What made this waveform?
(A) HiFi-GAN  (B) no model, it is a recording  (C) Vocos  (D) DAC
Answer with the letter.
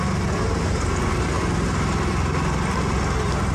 B